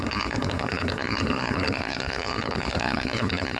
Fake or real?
fake